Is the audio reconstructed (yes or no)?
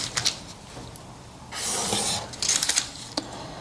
yes